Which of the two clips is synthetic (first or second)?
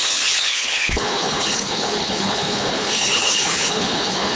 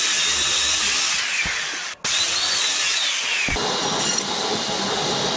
first